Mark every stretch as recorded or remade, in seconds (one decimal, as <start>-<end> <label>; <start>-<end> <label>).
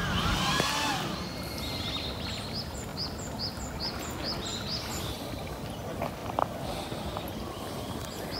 0.0-8.4 recorded